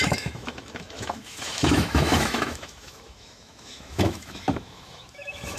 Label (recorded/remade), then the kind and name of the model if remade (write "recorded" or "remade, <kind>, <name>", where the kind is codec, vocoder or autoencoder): remade, autoencoder, DAC-VAE